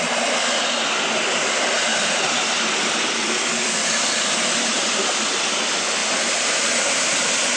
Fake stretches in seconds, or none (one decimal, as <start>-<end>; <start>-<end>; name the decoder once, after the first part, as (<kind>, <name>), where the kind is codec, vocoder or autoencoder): 1.9-5.3 (vocoder, BigVGAN v2); 6.0-7.6